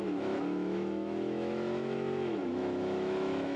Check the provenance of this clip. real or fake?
fake